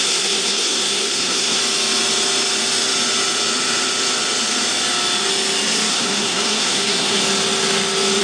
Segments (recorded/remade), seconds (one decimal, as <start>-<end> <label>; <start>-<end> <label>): 0.0-1.6 remade; 1.6-5.9 recorded; 5.9-7.2 remade; 7.2-8.2 recorded